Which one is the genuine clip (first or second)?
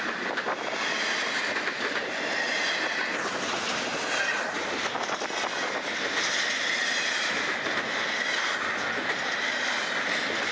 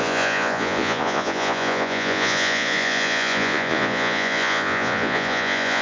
first